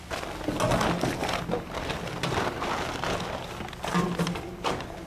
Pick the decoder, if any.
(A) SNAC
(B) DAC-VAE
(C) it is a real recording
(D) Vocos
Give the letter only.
C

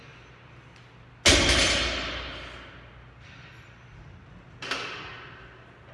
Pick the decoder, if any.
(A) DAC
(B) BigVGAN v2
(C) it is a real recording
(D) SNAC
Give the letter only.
C